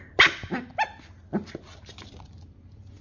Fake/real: real